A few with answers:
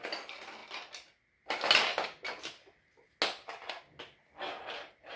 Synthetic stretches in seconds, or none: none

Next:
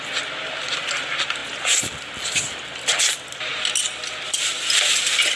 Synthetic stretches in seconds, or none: none

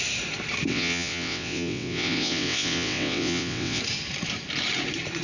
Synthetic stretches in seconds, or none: 0.7-3.8 (vocoder, WaveNeXt)